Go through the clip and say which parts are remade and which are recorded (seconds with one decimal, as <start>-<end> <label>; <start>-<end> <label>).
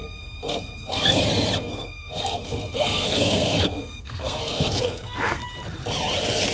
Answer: 0.0-1.2 remade; 1.2-1.6 recorded; 1.6-5.4 remade; 5.4-6.5 recorded